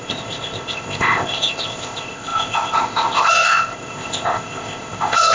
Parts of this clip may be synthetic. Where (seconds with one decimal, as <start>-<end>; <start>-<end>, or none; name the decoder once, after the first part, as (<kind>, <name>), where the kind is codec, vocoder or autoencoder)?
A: 0.0-5.3 (codec, ZipCodec)